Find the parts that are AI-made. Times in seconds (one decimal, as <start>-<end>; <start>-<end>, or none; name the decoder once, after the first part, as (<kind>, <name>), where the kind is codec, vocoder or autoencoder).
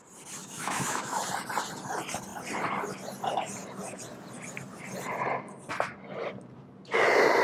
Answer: 0.4-1.2 (autoencoder, DAC-VAE)